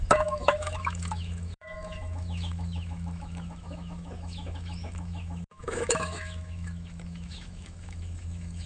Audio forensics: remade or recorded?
remade